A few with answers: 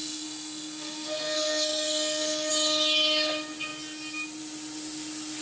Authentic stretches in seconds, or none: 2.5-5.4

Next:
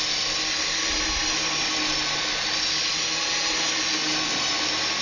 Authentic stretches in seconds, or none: 0.0-5.0

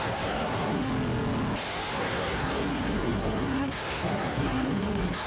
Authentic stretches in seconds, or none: 0.9-1.9

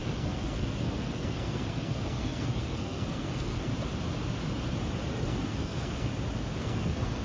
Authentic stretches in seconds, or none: 3.7-5.1; 6.1-6.6